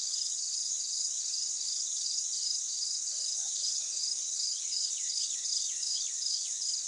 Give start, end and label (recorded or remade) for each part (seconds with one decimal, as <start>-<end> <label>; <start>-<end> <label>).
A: 0.0-6.9 remade